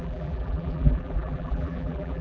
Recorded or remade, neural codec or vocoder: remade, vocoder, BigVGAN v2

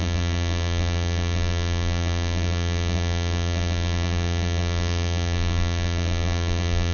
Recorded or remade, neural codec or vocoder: remade, vocoder, BigVGAN v2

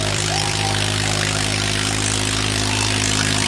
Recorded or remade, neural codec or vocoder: remade, vocoder, BigVGAN v2